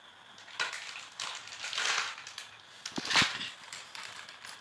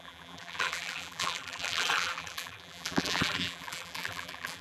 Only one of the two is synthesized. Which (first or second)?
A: second